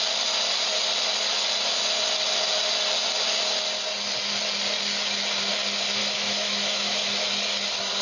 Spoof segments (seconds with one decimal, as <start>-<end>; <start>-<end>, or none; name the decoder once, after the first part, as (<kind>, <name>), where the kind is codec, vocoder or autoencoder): 6.0-7.3 (autoencoder, DAC-VAE)